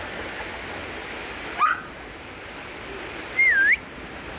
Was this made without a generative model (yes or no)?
yes